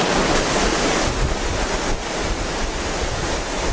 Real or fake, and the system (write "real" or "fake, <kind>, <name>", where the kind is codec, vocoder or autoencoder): real